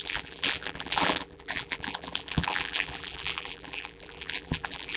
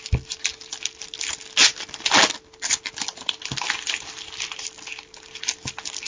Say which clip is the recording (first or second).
second